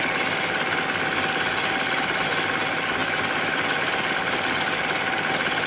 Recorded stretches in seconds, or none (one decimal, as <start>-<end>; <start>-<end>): 0.0-5.7